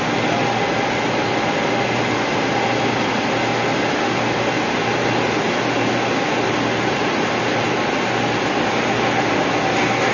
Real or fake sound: real